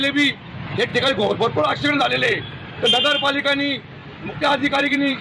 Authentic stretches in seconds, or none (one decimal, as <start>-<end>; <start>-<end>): 0.0-0.9; 2.9-4.0